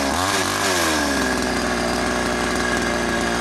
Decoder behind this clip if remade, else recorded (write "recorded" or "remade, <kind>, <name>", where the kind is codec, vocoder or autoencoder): recorded